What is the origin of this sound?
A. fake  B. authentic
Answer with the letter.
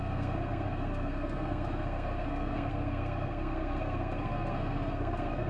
A